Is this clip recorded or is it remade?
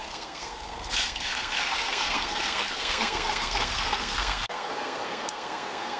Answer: remade